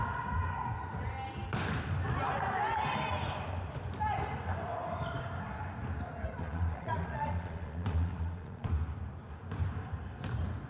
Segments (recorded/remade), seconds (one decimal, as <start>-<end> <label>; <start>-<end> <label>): 0.0-6.4 recorded; 6.4-8.7 remade; 8.7-10.7 recorded